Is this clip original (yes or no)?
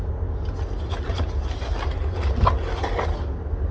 yes